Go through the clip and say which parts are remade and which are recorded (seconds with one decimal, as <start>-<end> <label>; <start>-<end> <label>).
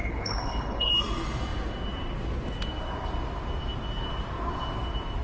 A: 0.0-0.9 remade; 0.9-5.2 recorded